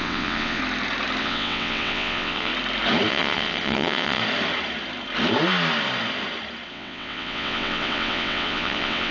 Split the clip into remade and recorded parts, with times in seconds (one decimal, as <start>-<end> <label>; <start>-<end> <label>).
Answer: 0.0-0.6 remade; 0.6-1.2 recorded; 1.2-2.5 remade; 2.5-3.1 recorded; 3.1-4.2 remade; 4.2-6.7 recorded; 6.7-9.1 remade